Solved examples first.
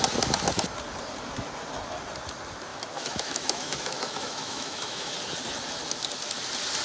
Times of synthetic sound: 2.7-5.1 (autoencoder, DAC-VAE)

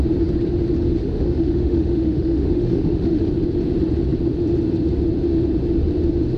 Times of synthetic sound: 1.0-3.3 (autoencoder, DAC-VAE)